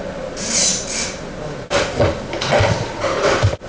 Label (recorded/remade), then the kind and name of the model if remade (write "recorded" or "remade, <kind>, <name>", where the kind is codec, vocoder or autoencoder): recorded